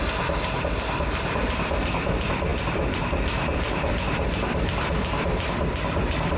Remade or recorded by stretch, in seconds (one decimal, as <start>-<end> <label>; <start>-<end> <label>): 0.0-6.4 remade